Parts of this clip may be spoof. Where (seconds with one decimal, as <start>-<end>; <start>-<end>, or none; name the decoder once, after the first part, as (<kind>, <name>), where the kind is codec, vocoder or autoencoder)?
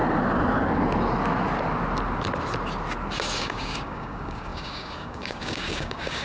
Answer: 3.4-6.2 (codec, DAC)